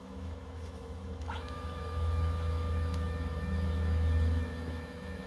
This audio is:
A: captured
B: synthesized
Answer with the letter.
B